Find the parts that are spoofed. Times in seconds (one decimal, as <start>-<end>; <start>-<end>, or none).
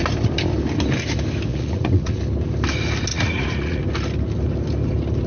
1.5-2.2; 3.1-3.8